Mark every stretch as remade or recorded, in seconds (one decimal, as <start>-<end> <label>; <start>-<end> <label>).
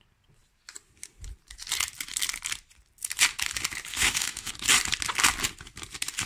0.0-3.9 recorded; 3.9-4.5 remade; 4.5-6.3 recorded